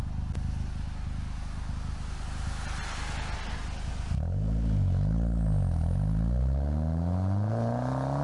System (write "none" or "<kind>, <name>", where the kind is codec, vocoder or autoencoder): none